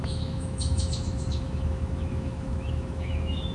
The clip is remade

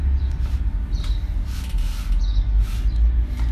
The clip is recorded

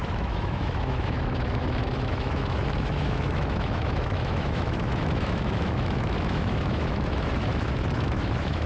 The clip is remade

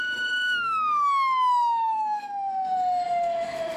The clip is remade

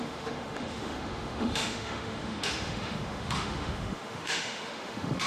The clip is remade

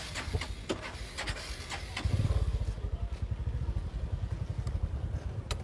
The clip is recorded